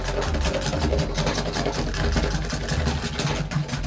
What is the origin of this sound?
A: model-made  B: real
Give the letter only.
B